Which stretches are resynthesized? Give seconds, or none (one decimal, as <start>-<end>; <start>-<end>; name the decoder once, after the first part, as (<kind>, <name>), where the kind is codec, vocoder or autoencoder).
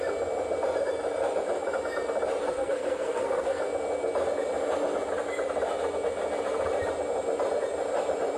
2.4-3.6 (codec, SNAC)